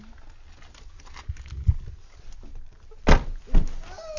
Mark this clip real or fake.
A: real